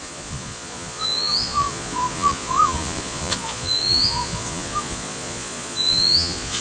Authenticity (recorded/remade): remade